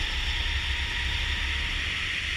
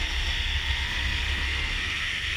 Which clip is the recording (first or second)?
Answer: first